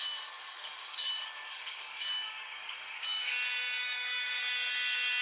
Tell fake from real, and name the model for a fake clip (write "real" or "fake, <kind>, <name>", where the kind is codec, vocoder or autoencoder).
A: fake, codec, DAC